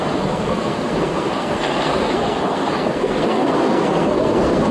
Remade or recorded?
remade